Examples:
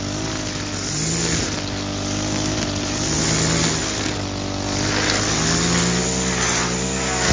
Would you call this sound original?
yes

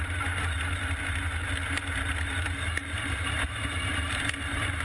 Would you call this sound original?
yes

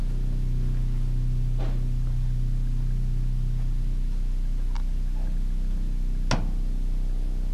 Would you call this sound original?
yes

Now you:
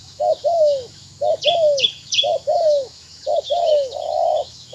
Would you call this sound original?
no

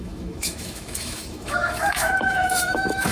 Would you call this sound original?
no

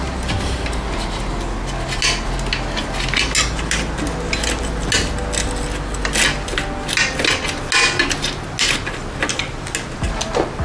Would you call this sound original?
yes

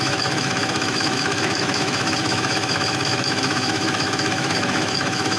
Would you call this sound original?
no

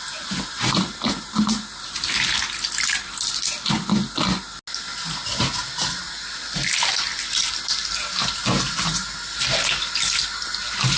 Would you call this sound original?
yes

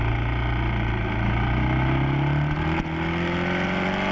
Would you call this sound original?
yes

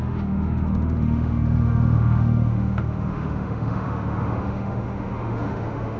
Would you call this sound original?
no